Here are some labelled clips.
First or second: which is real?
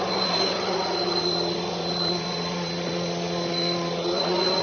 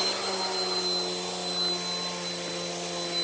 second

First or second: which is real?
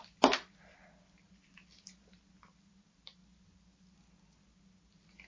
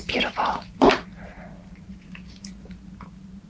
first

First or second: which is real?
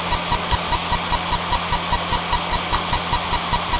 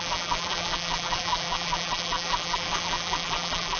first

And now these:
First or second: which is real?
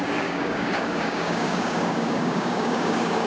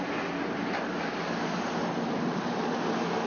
second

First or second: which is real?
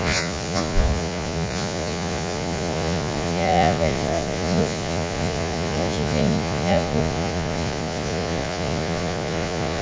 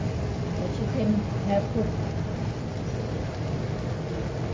second